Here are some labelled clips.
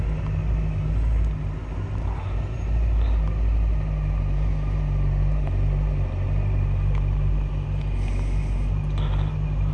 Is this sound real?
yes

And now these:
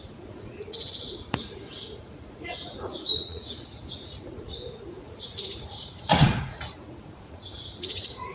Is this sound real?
no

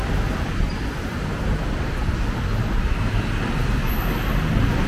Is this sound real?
yes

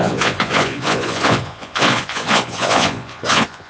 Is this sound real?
no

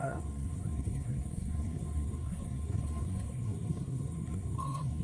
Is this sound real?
no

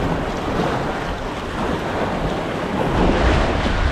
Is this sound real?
yes